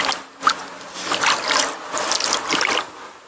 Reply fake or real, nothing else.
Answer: real